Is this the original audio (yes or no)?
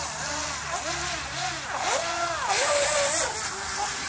yes